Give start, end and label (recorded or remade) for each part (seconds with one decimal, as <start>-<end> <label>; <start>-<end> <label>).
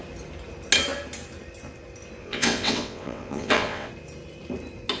0.0-2.2 recorded; 2.2-3.9 remade; 3.9-5.0 recorded